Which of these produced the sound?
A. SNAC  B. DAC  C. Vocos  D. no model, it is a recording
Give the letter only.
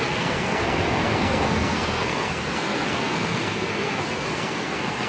A